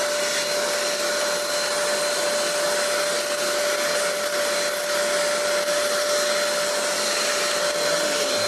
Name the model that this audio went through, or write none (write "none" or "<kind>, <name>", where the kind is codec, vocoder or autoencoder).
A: none